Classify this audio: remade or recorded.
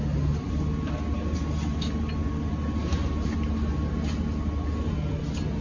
recorded